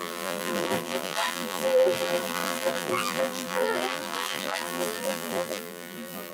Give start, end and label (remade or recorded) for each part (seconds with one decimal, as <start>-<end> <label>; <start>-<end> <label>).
0.0-6.3 remade